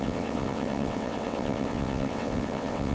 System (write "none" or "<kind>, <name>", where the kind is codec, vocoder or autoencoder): vocoder, WaveNeXt